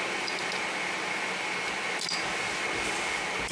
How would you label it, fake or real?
real